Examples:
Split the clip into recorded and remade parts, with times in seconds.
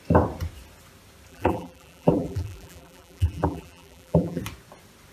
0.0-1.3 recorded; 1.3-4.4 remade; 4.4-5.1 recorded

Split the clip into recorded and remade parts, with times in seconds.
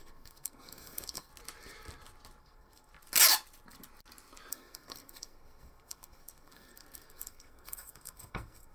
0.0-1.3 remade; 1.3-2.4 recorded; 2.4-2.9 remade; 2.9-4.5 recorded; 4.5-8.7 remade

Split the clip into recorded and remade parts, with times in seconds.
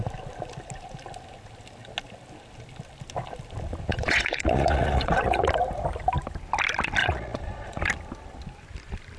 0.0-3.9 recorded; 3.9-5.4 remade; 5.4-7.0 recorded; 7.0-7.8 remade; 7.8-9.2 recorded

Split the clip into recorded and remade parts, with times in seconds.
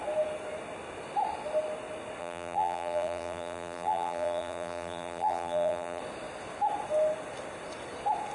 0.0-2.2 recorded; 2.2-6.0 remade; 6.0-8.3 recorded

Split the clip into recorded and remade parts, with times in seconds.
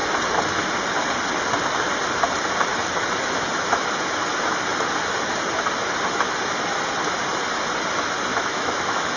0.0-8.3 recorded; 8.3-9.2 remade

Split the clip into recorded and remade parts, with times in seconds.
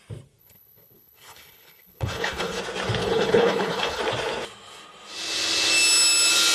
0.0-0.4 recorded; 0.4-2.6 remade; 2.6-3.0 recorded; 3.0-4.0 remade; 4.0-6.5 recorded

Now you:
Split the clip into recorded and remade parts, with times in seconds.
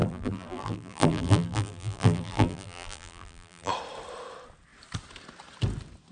0.0-3.7 remade; 3.7-6.1 recorded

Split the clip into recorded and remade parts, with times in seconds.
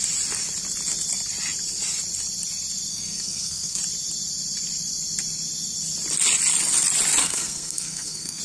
0.0-2.9 recorded; 2.9-3.8 remade; 3.8-7.2 recorded; 7.2-8.4 remade